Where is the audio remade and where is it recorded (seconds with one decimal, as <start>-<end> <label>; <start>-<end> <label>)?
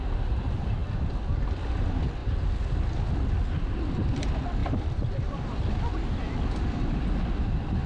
0.0-7.9 recorded